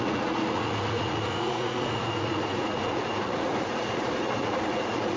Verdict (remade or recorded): remade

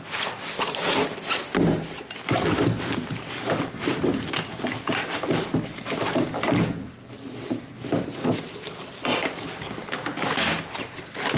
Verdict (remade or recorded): recorded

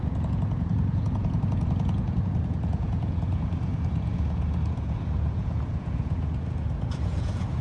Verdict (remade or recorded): remade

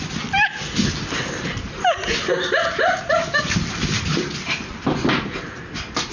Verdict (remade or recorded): recorded